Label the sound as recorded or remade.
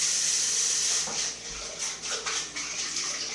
recorded